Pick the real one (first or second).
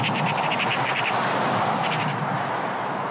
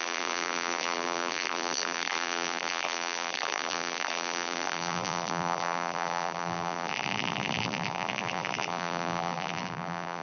first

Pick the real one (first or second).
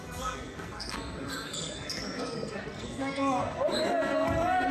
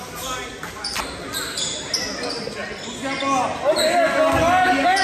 second